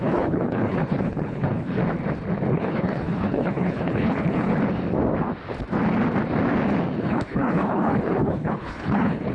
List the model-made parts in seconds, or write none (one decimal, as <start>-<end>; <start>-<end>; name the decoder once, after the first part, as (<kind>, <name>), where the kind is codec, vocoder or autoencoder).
0.0-1.8 (codec, HILCodec); 2.5-4.5; 7.0-9.3